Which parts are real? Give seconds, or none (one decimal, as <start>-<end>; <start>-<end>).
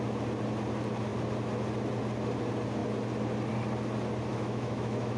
0.0-4.3